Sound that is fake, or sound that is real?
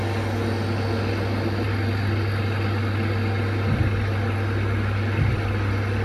real